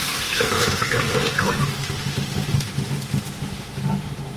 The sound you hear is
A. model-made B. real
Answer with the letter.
A